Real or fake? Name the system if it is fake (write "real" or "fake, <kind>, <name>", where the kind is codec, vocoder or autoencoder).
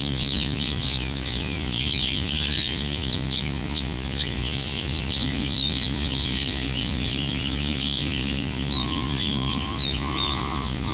fake, vocoder, Vocos